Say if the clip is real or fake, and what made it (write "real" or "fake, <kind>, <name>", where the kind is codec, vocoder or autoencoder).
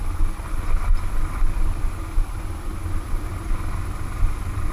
real